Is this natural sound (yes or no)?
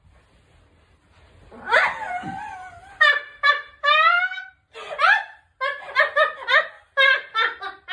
yes